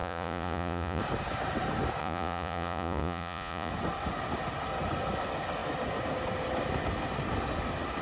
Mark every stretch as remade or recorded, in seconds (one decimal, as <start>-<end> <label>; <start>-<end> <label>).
0.0-1.0 remade; 1.0-2.0 recorded; 2.0-3.7 remade; 3.7-8.0 recorded